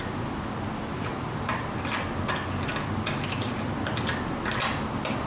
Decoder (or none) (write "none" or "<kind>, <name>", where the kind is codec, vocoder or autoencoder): none